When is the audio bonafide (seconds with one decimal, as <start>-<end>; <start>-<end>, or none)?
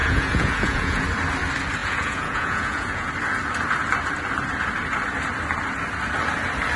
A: 1.0-1.8; 3.1-6.8